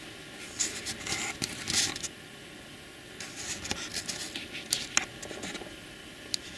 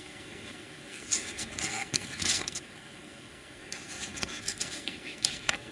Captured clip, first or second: first